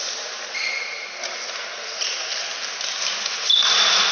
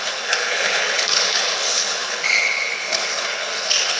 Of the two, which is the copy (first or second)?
second